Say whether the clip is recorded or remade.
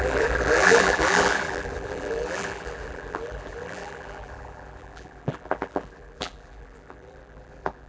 remade